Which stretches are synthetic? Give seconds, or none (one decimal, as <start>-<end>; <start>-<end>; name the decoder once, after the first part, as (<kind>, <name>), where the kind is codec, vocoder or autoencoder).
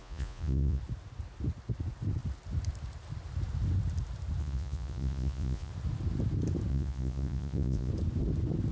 0.0-0.8 (vocoder, Vocos); 4.4-5.7; 6.7-7.9